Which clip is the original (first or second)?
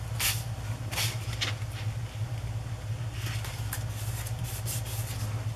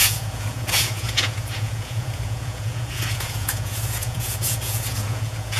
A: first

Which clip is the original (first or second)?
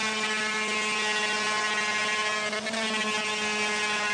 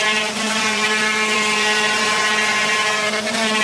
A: first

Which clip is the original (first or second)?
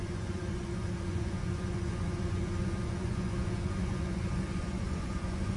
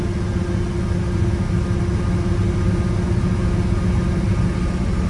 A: second